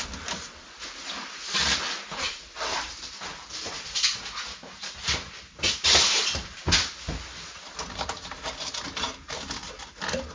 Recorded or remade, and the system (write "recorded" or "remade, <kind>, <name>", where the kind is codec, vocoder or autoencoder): recorded